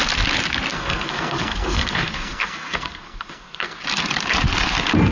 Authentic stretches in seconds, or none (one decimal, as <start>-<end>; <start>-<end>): 0.0-0.7; 3.8-5.1